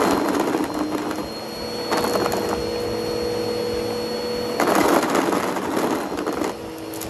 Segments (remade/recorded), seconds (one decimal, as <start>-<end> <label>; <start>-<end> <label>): 0.0-7.1 recorded